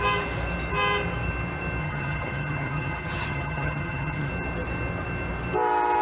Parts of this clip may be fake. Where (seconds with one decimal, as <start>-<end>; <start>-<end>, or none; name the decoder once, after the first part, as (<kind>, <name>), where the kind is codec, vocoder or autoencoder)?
1.8-4.3 (vocoder, HiFi-GAN)